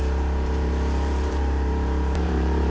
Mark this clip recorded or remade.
remade